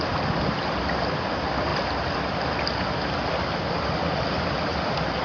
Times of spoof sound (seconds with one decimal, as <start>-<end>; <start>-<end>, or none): none

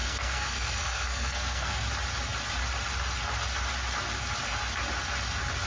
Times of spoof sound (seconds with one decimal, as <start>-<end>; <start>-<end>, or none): 0.0-1.9

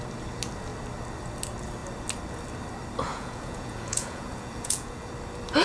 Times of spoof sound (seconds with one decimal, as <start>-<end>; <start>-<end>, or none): 3.1-5.1

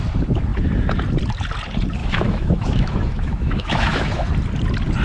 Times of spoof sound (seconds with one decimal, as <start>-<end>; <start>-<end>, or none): 2.0-4.3

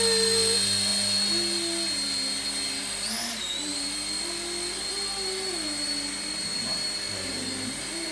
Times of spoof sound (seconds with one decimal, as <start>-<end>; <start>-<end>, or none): none